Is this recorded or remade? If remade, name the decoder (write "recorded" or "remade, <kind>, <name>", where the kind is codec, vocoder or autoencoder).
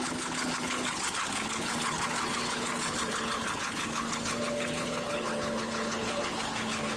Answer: remade, codec, HILCodec